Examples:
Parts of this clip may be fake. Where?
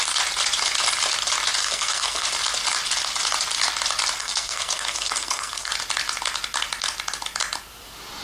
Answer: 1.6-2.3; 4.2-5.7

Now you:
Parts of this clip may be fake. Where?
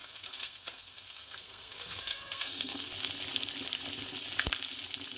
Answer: 0.0-2.9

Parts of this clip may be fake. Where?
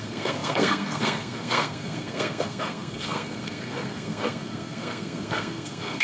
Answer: 0.0-6.0